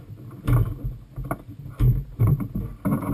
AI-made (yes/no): no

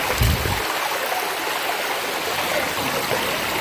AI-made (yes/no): no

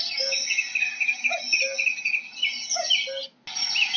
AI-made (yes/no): no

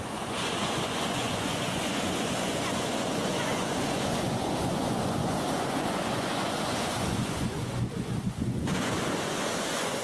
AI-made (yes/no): yes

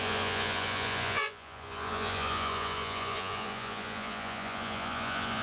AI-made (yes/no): yes